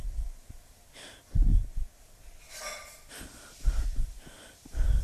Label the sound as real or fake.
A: real